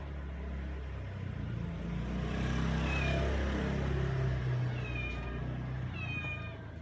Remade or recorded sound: recorded